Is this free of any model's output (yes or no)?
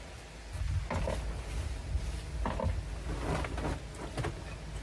yes